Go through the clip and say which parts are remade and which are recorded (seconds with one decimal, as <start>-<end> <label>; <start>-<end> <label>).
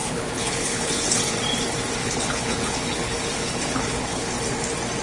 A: 0.0-1.2 remade; 1.2-2.0 recorded; 2.0-4.3 remade; 4.3-5.0 recorded